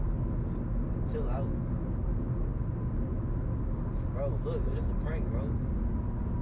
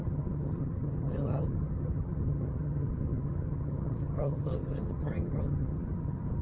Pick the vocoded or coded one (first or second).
second